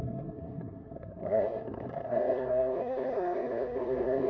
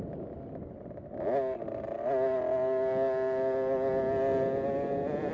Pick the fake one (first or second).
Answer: first